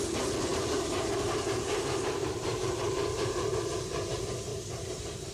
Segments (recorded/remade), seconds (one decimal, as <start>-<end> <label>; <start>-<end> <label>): 0.0-0.5 recorded; 0.5-3.5 remade; 3.5-4.5 recorded; 4.5-5.3 remade